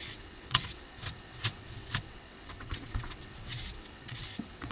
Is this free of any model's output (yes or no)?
no